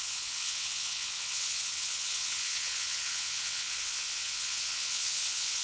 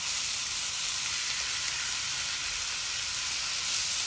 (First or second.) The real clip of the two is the second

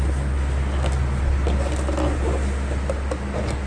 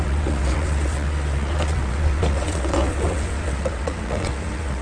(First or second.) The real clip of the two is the first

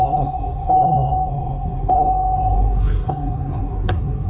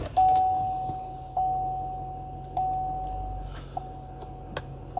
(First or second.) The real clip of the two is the second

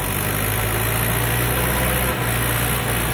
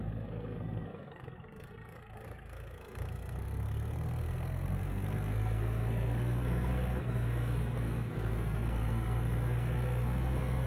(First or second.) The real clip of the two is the first